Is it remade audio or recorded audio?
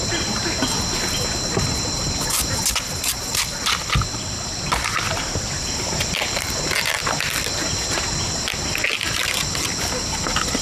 recorded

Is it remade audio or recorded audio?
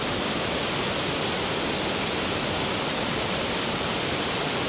recorded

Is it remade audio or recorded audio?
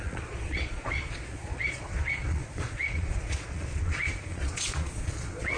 remade